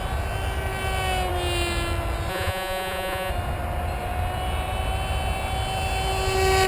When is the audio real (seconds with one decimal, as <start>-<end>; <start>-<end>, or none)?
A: 0.0-2.3; 3.3-6.7